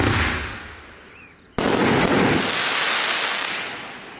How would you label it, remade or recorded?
recorded